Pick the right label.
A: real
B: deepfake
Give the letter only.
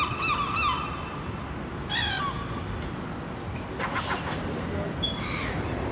A